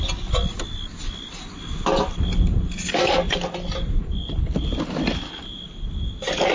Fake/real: real